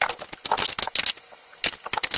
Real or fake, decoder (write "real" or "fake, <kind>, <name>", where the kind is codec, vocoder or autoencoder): real